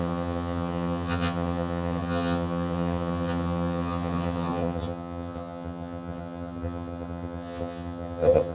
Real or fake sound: fake